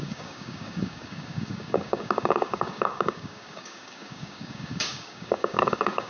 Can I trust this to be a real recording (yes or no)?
no